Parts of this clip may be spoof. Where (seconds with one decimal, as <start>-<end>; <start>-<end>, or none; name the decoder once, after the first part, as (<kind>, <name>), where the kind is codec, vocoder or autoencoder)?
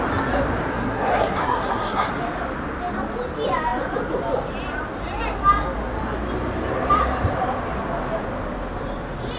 0.7-2.1 (codec, SNAC)